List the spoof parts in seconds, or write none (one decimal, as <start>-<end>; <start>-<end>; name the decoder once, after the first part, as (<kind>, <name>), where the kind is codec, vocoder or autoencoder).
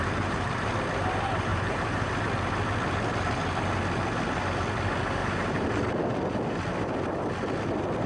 0.0-0.7 (vocoder, BigVGAN v2); 1.5-2.1; 5.2-6.0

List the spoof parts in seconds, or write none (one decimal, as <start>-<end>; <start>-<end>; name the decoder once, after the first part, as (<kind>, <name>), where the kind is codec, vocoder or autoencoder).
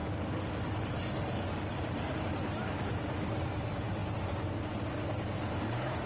1.6-4.0 (vocoder, BigVGAN v2); 4.6-6.1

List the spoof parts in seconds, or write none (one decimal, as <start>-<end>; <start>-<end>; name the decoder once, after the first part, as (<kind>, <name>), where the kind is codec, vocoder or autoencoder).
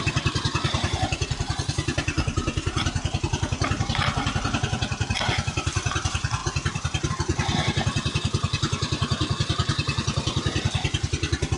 0.0-11.6 (vocoder, BigVGAN v2)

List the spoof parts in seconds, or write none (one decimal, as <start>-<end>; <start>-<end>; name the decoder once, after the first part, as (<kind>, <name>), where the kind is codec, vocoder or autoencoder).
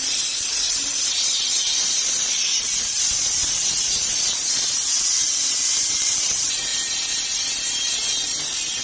0.0-6.7 (vocoder, BigVGAN v2); 7.8-8.8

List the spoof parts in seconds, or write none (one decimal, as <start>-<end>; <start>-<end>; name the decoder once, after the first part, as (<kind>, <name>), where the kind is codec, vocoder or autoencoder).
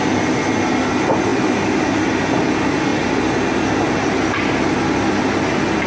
none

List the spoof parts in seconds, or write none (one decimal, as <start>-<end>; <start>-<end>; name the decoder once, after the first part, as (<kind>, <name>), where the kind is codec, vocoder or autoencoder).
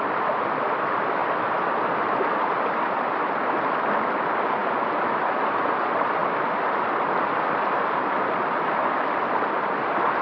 6.2-7.9 (vocoder, BigVGAN v2)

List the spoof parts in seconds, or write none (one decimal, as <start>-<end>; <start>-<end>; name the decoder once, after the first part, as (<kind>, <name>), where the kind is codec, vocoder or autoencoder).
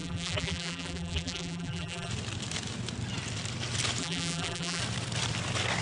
0.0-2.1 (vocoder, BigVGAN v2); 4.0-4.8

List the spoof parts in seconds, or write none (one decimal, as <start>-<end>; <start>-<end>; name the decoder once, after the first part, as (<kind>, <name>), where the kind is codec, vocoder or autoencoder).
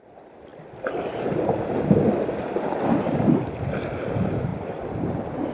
4.5-5.5 (vocoder, BigVGAN v2)